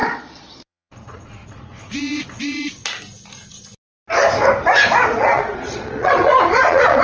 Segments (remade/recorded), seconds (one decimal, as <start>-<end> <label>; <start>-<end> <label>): 0.0-2.8 remade; 2.8-4.9 recorded; 4.9-7.0 remade